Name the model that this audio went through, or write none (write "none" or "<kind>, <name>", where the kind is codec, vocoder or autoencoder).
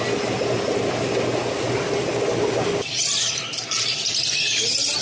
none